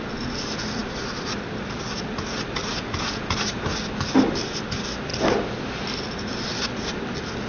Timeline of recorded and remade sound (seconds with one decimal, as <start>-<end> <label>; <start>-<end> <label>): 0.0-2.7 recorded; 2.7-3.4 remade; 3.4-7.5 recorded